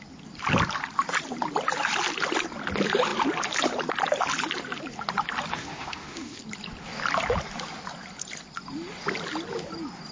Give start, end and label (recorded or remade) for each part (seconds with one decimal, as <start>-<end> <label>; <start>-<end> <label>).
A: 0.0-5.5 recorded; 5.5-6.4 remade; 6.4-10.1 recorded